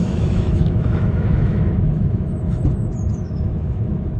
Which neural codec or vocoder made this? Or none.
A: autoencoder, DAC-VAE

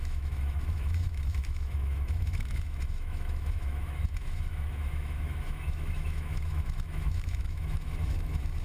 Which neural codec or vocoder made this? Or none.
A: autoencoder, DAC-VAE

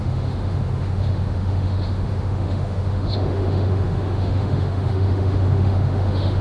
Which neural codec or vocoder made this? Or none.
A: autoencoder, DAC-VAE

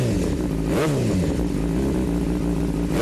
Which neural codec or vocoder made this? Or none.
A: none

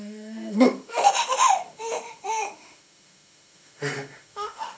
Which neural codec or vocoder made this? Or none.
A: autoencoder, DAC-VAE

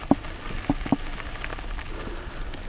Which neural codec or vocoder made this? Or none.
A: none